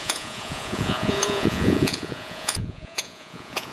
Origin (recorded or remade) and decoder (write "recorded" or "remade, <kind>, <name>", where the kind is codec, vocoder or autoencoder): remade, vocoder, Vocos